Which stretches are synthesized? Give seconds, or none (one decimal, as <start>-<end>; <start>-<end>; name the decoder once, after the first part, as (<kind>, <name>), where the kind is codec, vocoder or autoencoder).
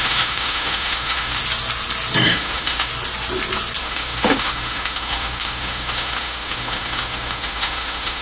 0.0-1.4 (autoencoder, DAC-VAE); 2.3-2.9; 3.8-8.2